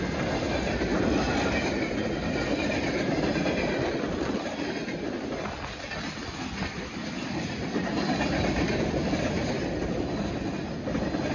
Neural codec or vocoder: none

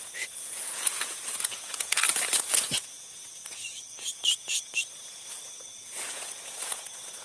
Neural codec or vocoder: vocoder, Vocos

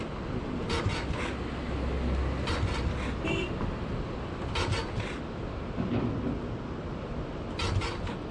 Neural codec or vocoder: none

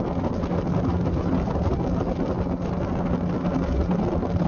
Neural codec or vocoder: none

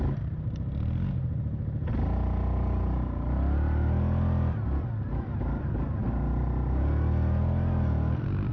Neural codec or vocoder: none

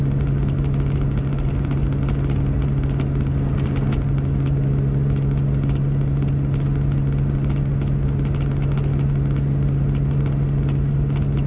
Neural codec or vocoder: none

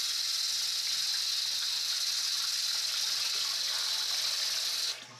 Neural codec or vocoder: none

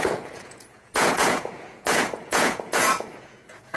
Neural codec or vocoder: vocoder, Vocos